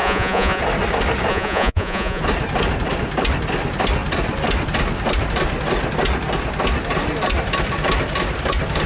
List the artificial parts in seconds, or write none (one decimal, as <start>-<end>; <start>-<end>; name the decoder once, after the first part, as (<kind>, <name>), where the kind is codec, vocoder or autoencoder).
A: 0.0-0.6 (vocoder, Vocos); 1.3-2.2